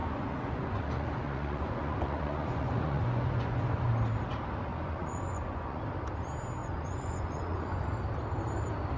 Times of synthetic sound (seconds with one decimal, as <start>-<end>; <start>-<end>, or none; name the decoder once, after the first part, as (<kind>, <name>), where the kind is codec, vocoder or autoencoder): 0.0-3.9 (vocoder, Vocos); 4.7-5.8; 6.6-7.8